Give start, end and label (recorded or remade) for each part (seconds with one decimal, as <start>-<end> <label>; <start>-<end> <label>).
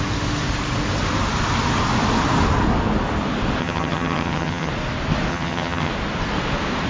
0.0-3.6 recorded; 3.6-4.7 remade; 4.7-5.3 recorded; 5.3-5.9 remade; 5.9-6.9 recorded